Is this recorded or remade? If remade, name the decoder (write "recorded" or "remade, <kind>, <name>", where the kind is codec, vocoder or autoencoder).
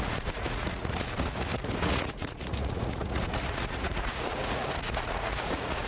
remade, vocoder, Vocos